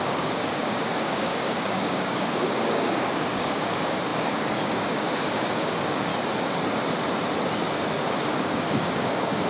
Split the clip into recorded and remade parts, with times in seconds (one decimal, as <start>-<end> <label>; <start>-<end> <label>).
0.0-6.1 remade; 6.1-8.2 recorded; 8.2-9.5 remade